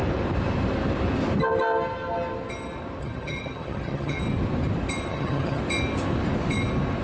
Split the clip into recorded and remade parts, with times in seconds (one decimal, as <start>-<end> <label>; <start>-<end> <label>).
0.0-3.0 recorded; 3.0-4.2 remade; 4.2-5.1 recorded; 5.1-5.6 remade; 5.6-7.0 recorded